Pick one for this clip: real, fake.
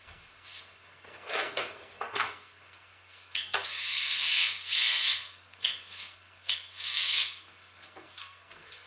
fake